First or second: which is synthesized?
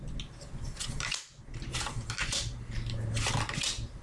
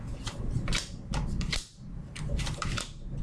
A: second